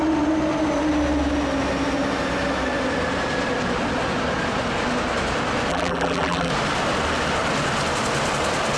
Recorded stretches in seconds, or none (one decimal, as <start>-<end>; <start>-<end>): 0.0-5.7; 6.5-8.8